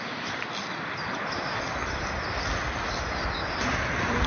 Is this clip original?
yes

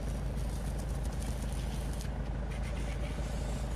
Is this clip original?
yes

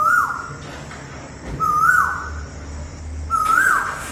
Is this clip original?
yes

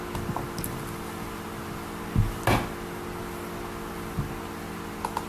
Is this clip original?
yes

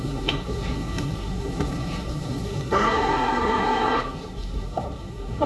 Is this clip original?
no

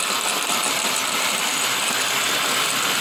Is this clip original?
yes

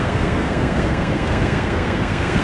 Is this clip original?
no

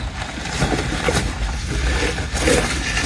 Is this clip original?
yes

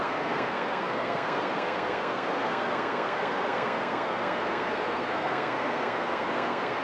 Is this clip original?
no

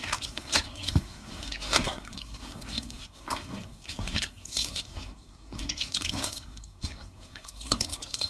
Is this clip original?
no